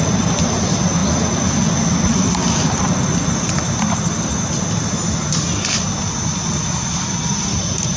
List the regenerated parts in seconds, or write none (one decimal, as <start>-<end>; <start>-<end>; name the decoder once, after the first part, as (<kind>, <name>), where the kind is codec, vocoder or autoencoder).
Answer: none